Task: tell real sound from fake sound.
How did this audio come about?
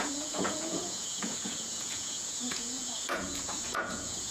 fake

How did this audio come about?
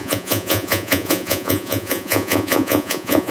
fake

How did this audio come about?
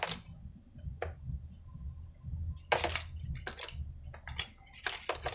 real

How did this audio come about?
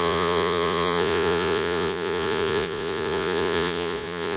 fake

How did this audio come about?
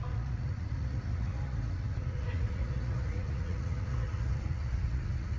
fake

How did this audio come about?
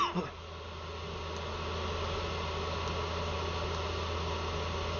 real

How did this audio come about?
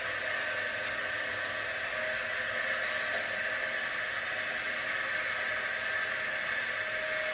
real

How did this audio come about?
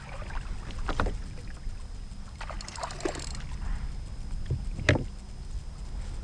real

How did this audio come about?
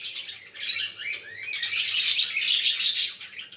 real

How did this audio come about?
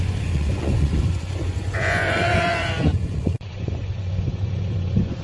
fake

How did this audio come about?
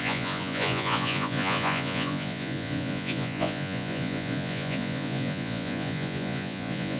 fake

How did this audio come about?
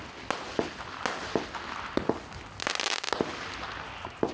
real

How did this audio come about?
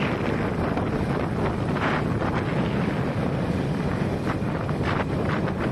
real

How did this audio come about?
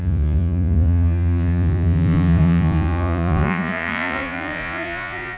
fake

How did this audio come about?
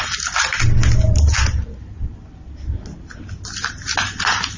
real